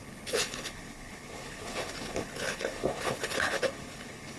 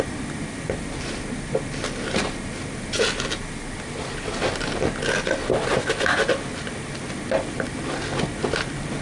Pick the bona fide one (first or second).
second